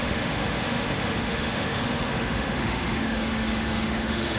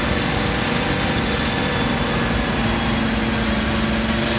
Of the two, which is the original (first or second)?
second